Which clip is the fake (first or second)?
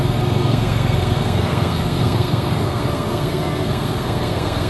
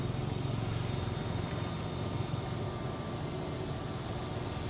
first